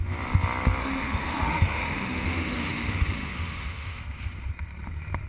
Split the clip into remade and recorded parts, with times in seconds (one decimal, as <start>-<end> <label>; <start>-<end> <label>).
0.0-0.8 recorded; 0.8-4.0 remade; 4.0-5.3 recorded